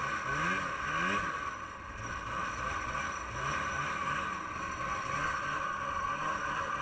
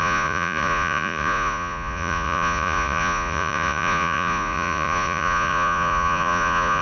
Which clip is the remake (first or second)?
second